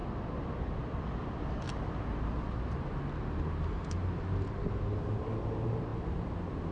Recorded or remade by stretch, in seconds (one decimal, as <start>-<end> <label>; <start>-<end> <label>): 0.0-6.7 recorded

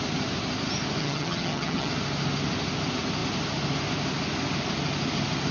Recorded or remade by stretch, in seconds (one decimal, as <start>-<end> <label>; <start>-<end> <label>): 0.0-1.0 recorded; 1.0-1.9 remade; 1.9-5.5 recorded